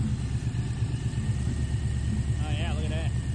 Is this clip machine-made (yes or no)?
no